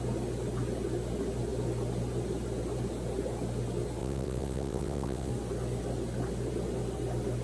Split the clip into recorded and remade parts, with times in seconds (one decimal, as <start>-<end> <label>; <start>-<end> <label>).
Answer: 0.0-4.0 recorded; 4.0-5.3 remade; 5.3-7.4 recorded